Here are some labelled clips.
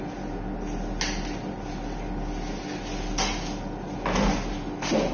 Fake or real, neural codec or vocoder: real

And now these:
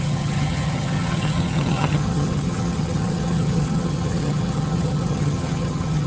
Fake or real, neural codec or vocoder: fake, vocoder, HiFi-GAN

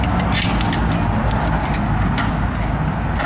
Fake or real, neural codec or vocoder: real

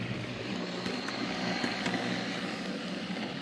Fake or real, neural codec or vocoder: fake, codec, DAC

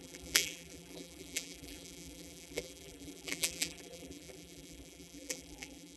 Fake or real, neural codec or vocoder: fake, vocoder, BigVGAN v2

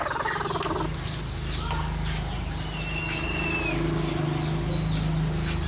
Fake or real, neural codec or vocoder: real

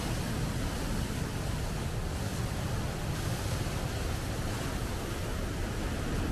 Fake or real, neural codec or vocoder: real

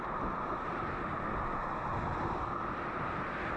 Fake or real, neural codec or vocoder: real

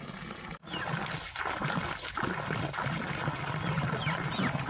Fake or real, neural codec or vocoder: real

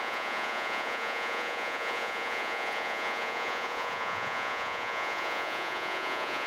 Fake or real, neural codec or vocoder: fake, vocoder, Vocos